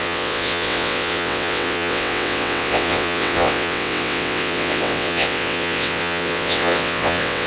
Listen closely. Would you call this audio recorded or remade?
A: remade